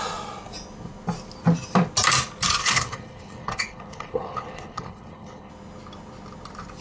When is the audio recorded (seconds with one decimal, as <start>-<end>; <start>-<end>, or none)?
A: 0.0-2.6; 5.5-6.8